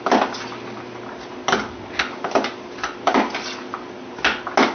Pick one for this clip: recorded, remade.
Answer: recorded